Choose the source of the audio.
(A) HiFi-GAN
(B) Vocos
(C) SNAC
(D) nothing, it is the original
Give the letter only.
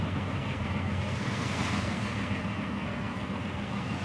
C